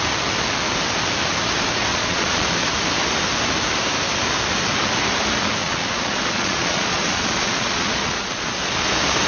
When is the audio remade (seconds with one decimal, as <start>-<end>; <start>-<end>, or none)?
1.9-2.6; 5.6-8.5